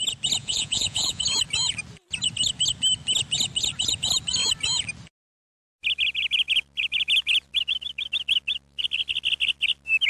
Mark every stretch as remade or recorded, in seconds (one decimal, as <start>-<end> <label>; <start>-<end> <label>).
0.0-0.4 recorded; 0.4-1.2 remade; 1.2-10.1 recorded